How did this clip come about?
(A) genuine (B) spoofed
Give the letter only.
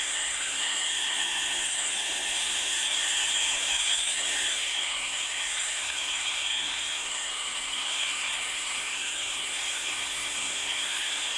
B